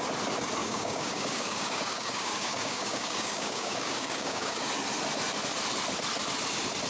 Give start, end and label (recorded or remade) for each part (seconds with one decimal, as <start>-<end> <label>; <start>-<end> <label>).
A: 0.0-0.6 recorded; 0.6-4.7 remade; 4.7-6.9 recorded